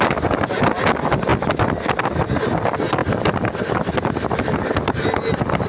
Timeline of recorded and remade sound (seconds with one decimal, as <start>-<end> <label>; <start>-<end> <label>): 0.0-5.7 recorded